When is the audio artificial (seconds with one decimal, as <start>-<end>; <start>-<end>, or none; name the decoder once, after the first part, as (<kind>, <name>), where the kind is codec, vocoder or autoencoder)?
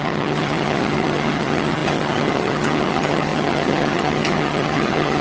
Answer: 0.0-5.2 (vocoder, HiFi-GAN)